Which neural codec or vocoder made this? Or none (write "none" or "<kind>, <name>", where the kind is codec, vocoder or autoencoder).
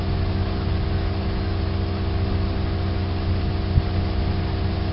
none